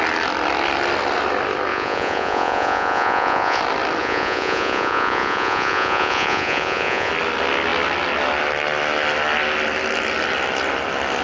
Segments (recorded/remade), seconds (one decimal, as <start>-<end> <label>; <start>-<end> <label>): 0.0-1.7 recorded; 1.7-3.6 remade; 3.6-4.0 recorded; 4.0-7.1 remade; 7.1-11.2 recorded